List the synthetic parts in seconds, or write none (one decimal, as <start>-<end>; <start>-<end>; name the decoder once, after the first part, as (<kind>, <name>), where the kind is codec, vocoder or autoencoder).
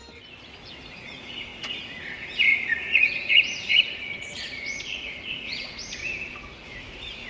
0.9-6.0 (vocoder, Vocos); 6.5-7.3